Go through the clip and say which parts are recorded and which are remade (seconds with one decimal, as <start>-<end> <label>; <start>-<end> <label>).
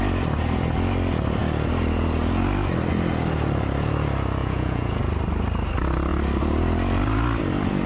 0.0-4.4 recorded; 4.4-5.0 remade; 5.0-7.9 recorded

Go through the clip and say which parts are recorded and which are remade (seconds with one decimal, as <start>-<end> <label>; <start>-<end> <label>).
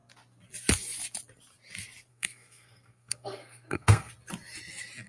0.0-2.1 recorded; 2.1-4.1 remade; 4.1-5.1 recorded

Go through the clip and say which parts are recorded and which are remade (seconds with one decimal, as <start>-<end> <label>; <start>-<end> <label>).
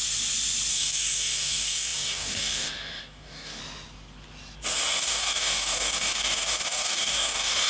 0.0-0.7 recorded; 0.7-3.6 remade; 3.6-5.0 recorded; 5.0-7.7 remade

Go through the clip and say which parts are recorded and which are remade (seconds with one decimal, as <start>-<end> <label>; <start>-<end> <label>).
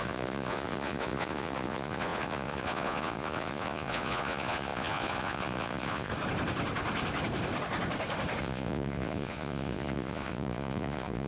0.0-6.1 remade; 6.1-8.4 recorded; 8.4-11.3 remade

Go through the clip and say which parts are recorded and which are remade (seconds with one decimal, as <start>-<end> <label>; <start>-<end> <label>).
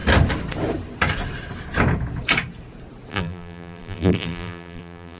0.0-3.1 recorded; 3.1-5.2 remade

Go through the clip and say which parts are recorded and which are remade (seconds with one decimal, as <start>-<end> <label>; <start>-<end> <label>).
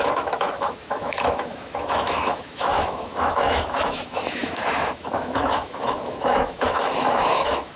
0.0-7.8 remade